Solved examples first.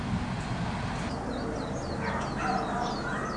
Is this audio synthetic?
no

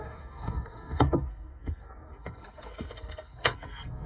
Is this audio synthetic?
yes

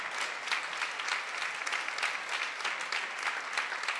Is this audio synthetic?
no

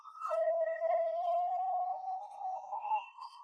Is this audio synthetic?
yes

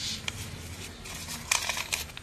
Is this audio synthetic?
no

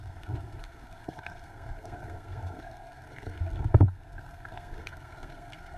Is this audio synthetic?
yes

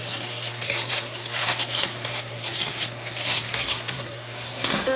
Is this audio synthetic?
yes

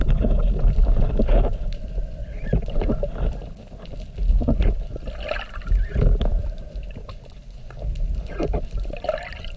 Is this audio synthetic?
no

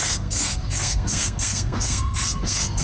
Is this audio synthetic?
yes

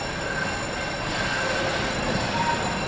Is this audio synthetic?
no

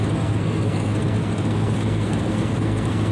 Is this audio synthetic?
yes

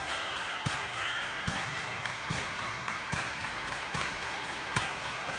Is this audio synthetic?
yes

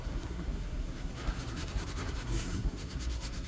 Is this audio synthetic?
yes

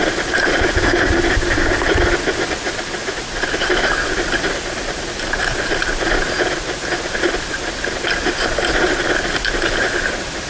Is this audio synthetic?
no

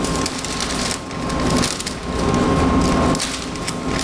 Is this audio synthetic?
no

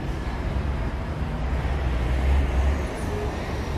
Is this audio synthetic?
no